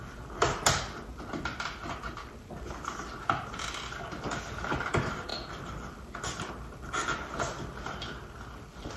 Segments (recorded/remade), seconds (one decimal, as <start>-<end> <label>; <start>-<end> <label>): 0.0-9.0 recorded